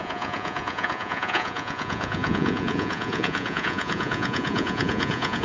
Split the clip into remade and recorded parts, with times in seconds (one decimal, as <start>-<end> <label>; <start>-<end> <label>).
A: 0.0-5.4 remade